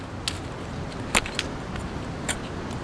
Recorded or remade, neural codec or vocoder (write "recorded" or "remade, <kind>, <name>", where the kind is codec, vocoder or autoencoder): recorded